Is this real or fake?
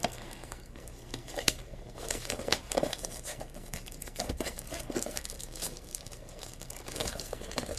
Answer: fake